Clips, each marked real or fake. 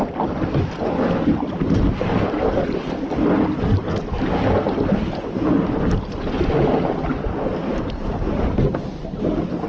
real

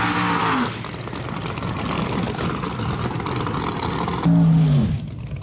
real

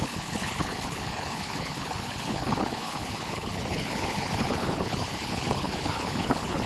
fake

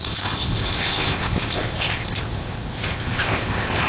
fake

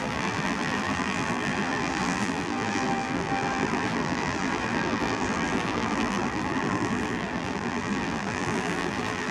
fake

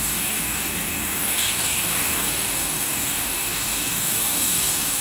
fake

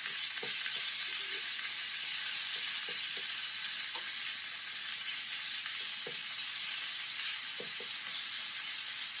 real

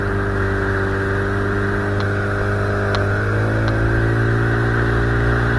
real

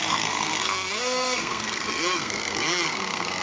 fake